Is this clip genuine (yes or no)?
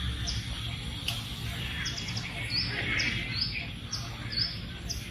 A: yes